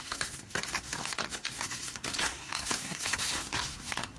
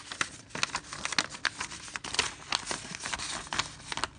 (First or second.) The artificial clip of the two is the first